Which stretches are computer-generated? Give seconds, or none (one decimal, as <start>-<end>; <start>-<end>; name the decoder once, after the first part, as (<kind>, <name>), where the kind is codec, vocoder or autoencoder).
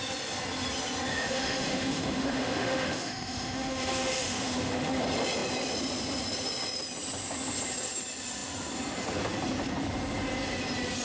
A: 1.1-5.0 (autoencoder, DAC-VAE)